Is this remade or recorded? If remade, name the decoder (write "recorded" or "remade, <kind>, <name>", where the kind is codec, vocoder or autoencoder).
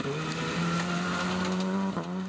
recorded